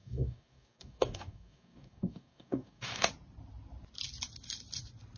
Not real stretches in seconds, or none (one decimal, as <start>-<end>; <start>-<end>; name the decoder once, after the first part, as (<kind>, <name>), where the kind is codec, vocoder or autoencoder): 0.0-3.1 (codec, DAC)